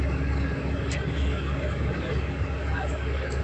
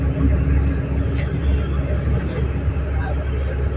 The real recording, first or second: second